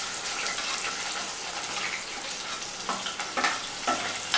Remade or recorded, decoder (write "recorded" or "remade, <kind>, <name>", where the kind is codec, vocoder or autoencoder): recorded